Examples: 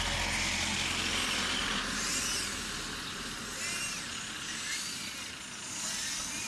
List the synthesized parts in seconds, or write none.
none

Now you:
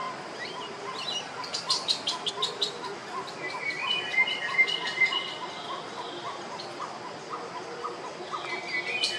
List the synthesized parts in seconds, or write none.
0.0-2.3 (vocoder, BigVGAN v2); 3.0-7.3

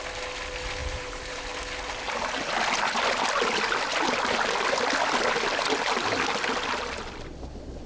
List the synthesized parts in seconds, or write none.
0.8-1.4 (vocoder, BigVGAN v2)

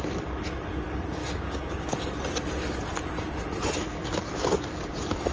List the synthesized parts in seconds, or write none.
1.2-1.9 (codec, DAC)

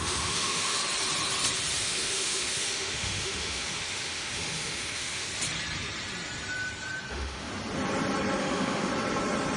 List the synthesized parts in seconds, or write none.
0.0-0.8 (autoencoder, DAC-VAE); 1.8-5.3; 7.1-7.5; 8.4-8.9

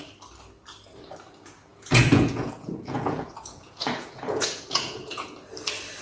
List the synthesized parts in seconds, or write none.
1.7-5.3 (vocoder, Vocos)